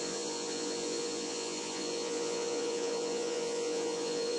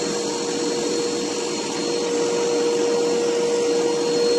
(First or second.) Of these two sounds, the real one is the second